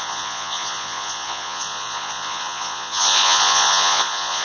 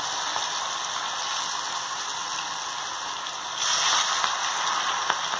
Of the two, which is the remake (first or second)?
first